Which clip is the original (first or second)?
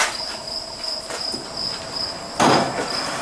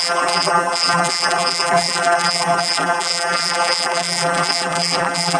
first